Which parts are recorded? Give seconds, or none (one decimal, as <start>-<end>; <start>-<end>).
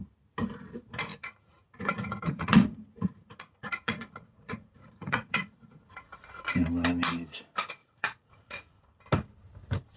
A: 0.0-1.1; 6.4-7.8; 8.8-10.0